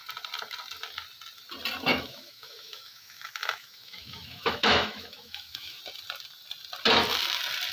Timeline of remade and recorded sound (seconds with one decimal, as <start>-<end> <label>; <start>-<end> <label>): 0.0-1.9 recorded; 1.9-5.8 remade; 5.8-7.7 recorded